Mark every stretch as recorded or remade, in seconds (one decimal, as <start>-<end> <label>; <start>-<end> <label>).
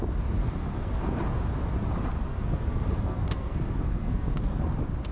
0.0-0.4 recorded; 0.4-1.0 remade; 1.0-2.3 recorded; 2.3-4.6 remade; 4.6-5.1 recorded